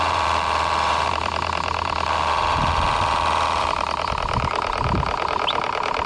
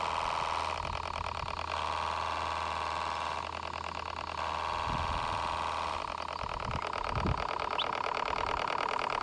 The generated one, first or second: first